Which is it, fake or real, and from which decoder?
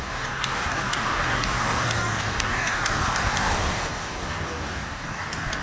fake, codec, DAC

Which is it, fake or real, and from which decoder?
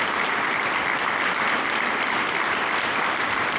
fake, vocoder, BigVGAN v2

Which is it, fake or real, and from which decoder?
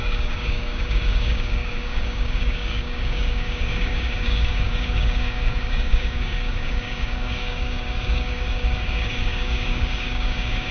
fake, codec, DAC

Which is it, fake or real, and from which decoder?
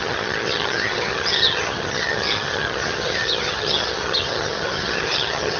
fake, vocoder, HiFi-GAN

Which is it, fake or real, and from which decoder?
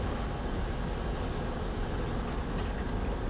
real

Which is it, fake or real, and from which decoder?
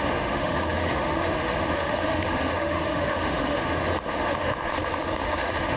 fake, autoencoder, DAC-VAE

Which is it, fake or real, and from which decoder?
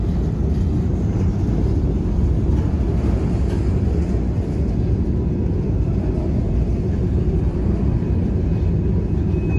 real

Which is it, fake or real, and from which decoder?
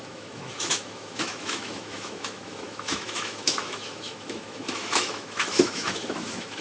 fake, autoencoder, DAC-VAE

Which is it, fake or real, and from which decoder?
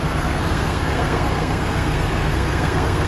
fake, codec, SNAC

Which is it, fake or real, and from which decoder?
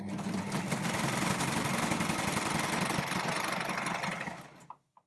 real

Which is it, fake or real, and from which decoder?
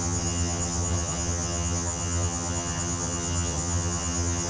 fake, vocoder, HiFi-GAN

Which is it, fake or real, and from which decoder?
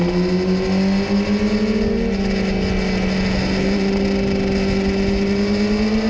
real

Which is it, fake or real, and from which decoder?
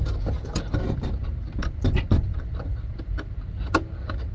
real